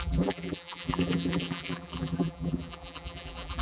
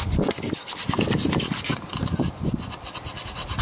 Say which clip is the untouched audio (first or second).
second